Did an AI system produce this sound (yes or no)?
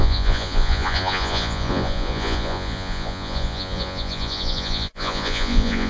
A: yes